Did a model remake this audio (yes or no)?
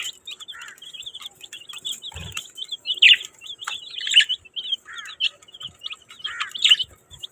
no